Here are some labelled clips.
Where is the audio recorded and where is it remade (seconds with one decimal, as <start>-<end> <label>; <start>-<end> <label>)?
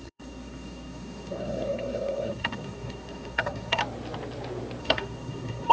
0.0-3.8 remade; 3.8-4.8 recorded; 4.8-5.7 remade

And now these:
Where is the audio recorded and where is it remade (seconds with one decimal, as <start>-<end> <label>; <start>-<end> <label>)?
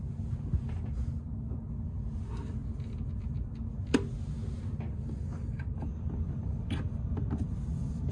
0.0-8.1 recorded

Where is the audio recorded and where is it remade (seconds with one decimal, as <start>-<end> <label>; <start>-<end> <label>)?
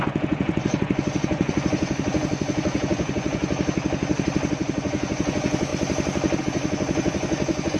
0.0-3.4 remade; 3.4-4.5 recorded; 4.5-5.7 remade; 5.7-6.4 recorded; 6.4-7.8 remade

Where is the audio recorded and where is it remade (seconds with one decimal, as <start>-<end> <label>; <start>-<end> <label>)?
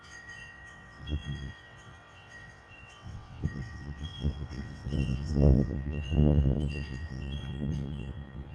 0.0-8.5 remade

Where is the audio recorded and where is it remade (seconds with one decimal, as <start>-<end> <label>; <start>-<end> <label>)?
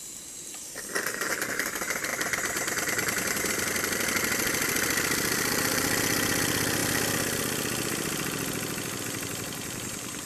0.0-6.8 remade; 6.8-9.0 recorded; 9.0-10.3 remade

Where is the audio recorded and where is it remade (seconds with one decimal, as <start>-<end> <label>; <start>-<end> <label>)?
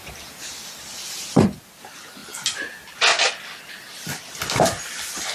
0.0-5.3 recorded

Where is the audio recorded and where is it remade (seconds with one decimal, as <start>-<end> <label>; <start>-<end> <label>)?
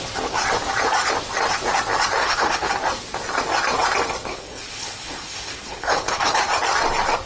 0.0-2.2 recorded; 2.2-2.7 remade; 2.7-4.3 recorded; 4.3-6.4 remade; 6.4-7.3 recorded